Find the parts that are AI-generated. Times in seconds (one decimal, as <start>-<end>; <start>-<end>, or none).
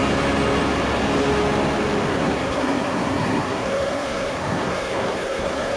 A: 2.1-5.8